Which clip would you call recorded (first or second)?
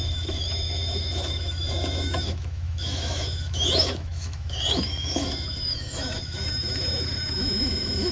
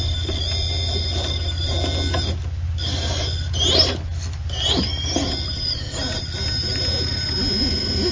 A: second